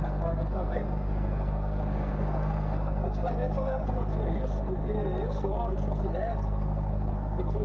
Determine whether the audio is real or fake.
fake